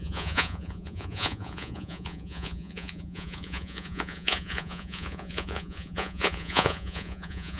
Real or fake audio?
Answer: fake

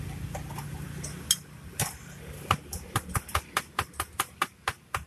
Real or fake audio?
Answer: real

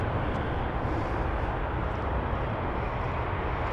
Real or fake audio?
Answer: real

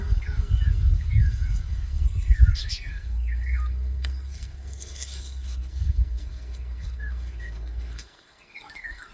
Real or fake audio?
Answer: fake